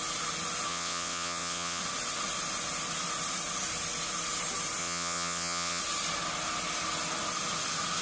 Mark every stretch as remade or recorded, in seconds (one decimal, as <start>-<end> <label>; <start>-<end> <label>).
0.0-0.7 recorded; 0.7-1.8 remade; 1.8-4.8 recorded; 4.8-5.8 remade; 5.8-8.0 recorded